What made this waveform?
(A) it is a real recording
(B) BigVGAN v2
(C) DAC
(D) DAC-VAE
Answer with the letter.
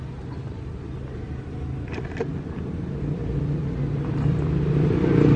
B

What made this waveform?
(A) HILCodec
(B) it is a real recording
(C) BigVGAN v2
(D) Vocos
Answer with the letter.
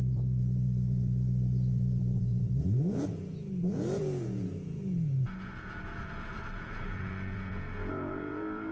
D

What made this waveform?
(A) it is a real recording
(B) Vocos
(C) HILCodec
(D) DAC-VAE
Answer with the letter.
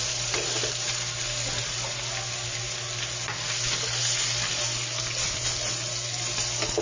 A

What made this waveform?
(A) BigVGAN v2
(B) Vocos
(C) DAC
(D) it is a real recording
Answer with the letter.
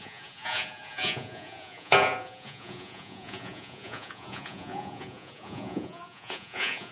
B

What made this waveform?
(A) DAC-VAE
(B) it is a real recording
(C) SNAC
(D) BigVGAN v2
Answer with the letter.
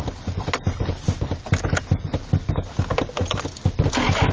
B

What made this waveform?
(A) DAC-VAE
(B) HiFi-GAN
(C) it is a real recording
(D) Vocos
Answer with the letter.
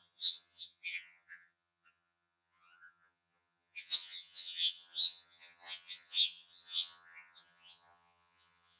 B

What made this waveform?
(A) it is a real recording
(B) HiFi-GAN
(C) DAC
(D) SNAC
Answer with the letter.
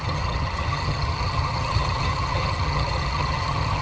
B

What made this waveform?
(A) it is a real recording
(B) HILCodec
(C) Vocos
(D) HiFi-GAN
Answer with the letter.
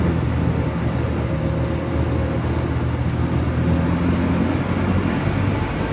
A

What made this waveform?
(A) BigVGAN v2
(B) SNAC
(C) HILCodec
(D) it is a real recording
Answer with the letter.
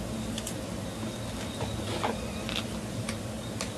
A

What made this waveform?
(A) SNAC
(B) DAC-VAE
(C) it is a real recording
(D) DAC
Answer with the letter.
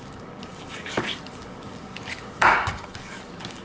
D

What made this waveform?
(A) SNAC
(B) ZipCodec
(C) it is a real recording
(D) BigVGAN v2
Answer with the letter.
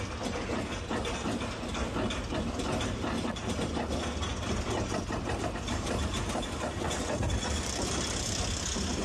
C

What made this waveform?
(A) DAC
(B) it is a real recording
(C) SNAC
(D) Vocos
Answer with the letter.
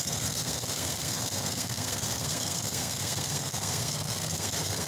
C